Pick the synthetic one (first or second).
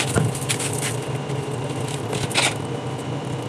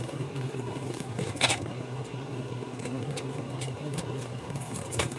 second